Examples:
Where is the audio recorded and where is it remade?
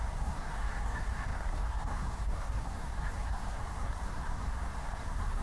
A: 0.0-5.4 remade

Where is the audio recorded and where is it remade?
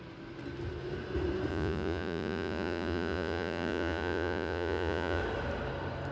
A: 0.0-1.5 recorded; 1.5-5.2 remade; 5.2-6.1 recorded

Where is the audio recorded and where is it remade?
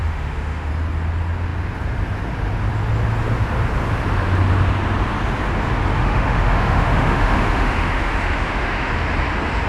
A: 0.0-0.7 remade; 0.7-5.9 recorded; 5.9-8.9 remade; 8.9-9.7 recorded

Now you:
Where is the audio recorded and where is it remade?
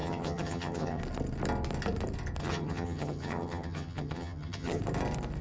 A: 0.0-1.0 remade; 1.0-2.4 recorded; 2.4-4.8 remade; 4.8-5.4 recorded